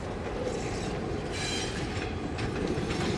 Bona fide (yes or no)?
no